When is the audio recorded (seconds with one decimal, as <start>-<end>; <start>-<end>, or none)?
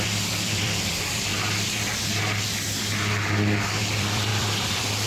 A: 1.3-3.8